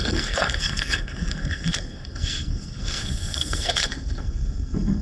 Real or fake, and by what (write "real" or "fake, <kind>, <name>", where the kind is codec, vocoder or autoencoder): fake, codec, SNAC